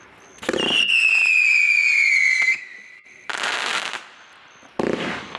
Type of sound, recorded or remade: recorded